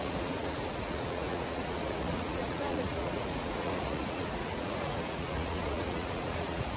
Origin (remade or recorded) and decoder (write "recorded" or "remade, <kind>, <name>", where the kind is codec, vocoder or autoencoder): remade, vocoder, Vocos